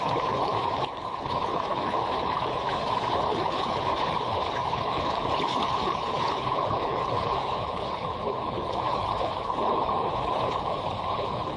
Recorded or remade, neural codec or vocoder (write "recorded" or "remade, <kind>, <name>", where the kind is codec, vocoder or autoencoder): remade, codec, HILCodec